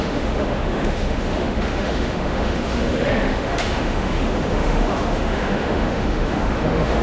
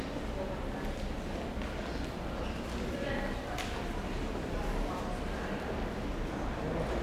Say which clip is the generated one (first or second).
first